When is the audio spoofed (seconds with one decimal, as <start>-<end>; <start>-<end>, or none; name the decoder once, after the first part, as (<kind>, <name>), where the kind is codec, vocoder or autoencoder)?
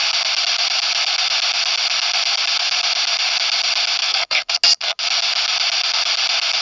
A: 4.0-4.5 (codec, SNAC)